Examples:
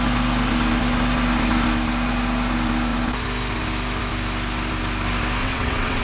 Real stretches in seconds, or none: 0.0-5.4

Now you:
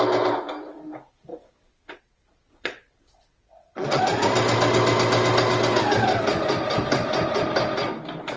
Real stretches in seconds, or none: 0.0-1.3; 4.0-8.4

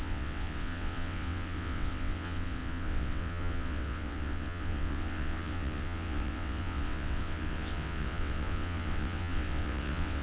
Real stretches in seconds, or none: none

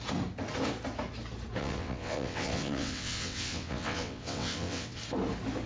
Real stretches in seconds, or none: 0.0-1.6; 5.0-5.7

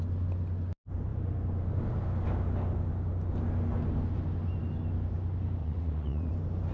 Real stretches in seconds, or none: 0.0-5.6; 6.3-6.7